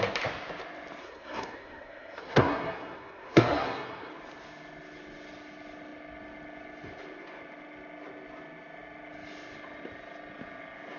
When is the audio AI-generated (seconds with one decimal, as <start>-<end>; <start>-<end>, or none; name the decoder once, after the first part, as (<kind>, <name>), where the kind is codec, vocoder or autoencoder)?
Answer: 1.0-4.1 (codec, SNAC)